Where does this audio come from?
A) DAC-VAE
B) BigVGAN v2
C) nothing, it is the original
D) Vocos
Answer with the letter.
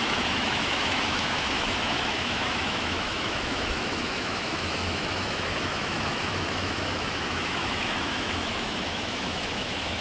A